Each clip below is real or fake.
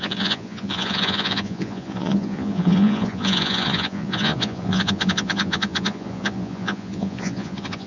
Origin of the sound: fake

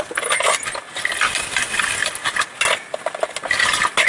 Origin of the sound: real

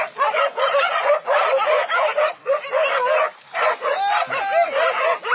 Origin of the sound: real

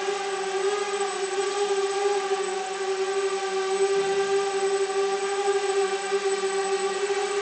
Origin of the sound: real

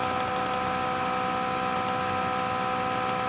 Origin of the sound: real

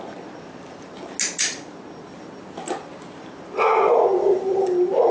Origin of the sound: real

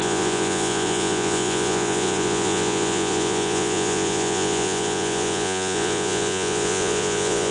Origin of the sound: fake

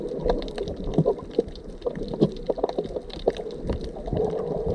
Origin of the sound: real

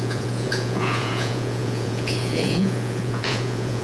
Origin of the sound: fake